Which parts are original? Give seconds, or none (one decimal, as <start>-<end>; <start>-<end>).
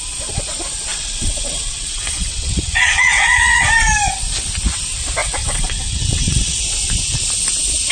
0.0-0.9; 3.7-5.2; 6.6-7.9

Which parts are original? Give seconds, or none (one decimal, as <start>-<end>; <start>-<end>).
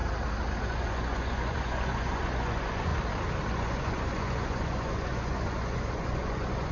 0.0-0.6; 2.9-3.5